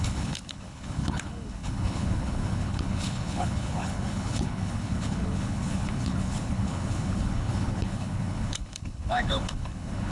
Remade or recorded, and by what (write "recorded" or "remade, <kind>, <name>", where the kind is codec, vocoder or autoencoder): remade, codec, HILCodec